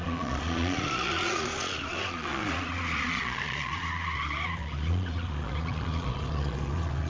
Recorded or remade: remade